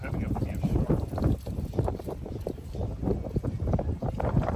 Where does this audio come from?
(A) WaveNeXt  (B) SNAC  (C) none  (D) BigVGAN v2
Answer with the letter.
D